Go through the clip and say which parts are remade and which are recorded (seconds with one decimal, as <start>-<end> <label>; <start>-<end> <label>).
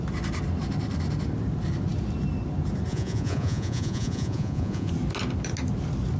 0.0-2.9 recorded; 2.9-4.9 remade; 4.9-6.2 recorded